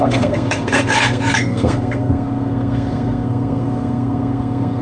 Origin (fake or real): fake